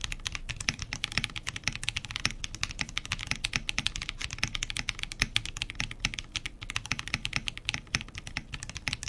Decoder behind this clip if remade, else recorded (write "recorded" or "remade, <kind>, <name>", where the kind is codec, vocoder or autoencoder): recorded